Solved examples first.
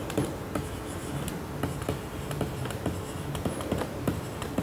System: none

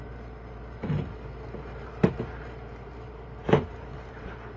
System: vocoder, BigVGAN v2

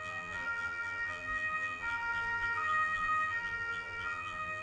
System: vocoder, BigVGAN v2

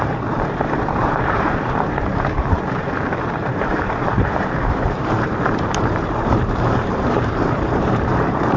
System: vocoder, BigVGAN v2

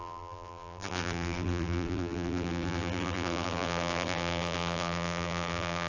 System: vocoder, BigVGAN v2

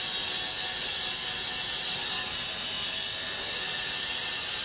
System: none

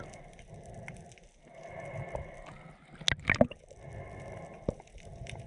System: none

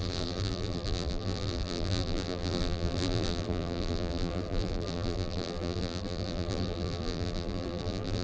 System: vocoder, BigVGAN v2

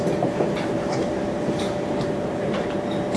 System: vocoder, BigVGAN v2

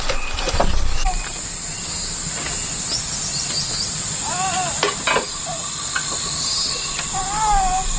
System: none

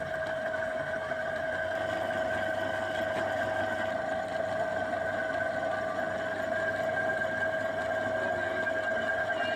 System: none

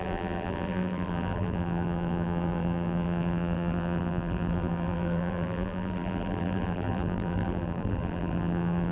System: vocoder, BigVGAN v2